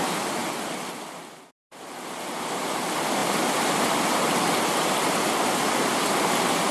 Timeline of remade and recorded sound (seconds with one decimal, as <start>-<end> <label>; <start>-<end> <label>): 0.0-6.7 recorded